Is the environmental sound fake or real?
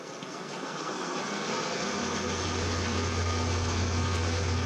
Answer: fake